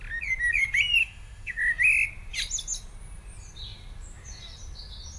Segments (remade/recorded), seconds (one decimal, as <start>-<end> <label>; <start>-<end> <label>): 0.0-1.0 recorded; 1.0-1.6 remade; 1.6-5.2 recorded